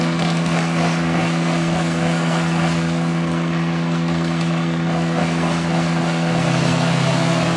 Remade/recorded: remade